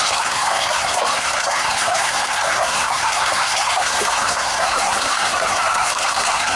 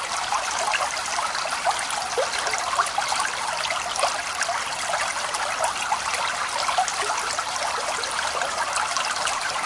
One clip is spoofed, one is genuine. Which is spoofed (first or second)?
first